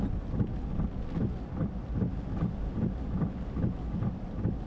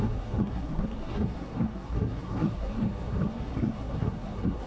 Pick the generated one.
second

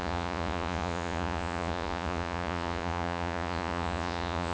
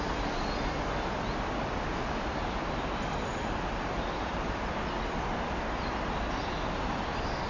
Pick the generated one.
first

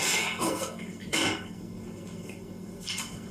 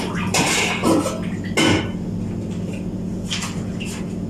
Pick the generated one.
first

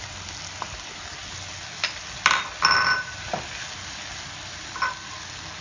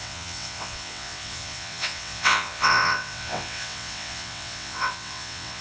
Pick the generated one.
second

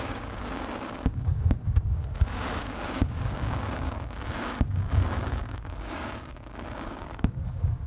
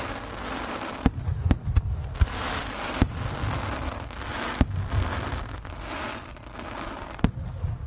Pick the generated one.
first